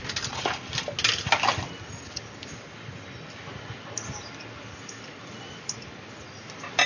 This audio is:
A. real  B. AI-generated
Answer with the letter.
A